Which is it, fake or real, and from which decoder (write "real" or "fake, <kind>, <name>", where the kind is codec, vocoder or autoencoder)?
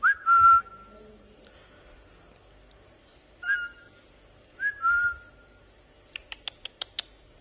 real